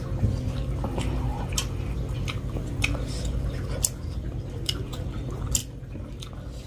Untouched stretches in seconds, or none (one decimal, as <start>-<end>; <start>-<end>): 0.0-6.7